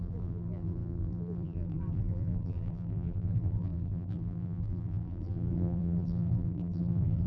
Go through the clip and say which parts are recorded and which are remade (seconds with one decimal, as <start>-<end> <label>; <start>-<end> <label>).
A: 0.0-7.3 remade